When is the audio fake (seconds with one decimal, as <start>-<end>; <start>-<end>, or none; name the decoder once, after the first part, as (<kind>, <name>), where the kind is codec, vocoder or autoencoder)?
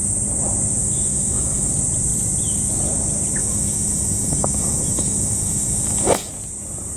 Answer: 0.8-1.7 (autoencoder, DAC-VAE); 3.4-6.3